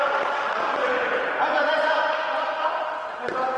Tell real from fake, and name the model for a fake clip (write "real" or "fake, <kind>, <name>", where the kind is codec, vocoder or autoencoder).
real